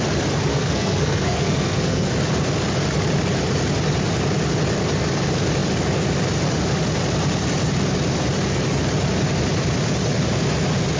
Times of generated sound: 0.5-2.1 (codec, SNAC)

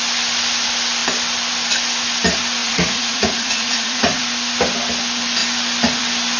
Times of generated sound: 2.6-4.2 (vocoder, Vocos)

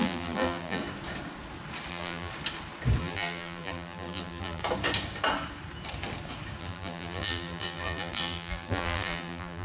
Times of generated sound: 0.0-0.8 (vocoder, BigVGAN v2); 1.9-2.3; 3.0-4.6; 6.6-9.6

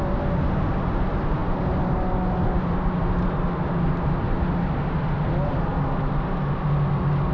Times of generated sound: none

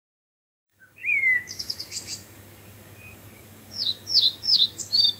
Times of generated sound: 0.0-5.2 (codec, DAC)